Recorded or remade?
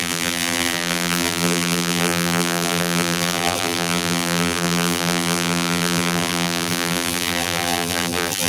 remade